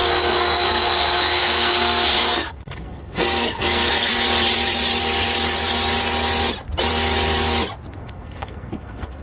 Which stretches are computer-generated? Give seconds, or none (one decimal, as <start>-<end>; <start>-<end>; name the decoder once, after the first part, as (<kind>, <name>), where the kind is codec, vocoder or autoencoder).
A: 0.0-4.1 (codec, SNAC); 8.0-9.2